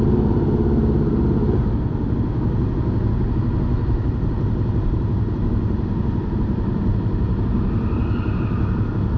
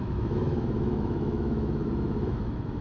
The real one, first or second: first